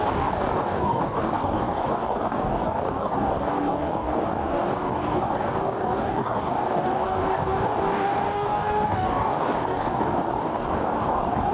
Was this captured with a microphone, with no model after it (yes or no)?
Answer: no